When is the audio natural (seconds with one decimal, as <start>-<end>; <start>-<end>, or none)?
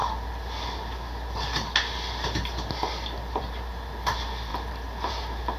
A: 0.0-5.6